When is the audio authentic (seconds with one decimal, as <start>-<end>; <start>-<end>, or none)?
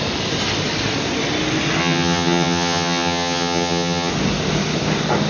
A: 0.0-1.8; 4.1-5.3